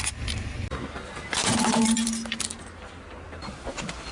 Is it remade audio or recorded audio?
recorded